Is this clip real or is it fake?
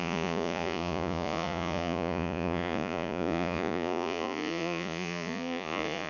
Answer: fake